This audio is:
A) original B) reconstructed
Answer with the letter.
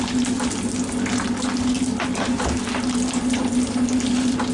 A